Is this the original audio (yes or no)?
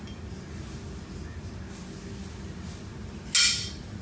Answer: yes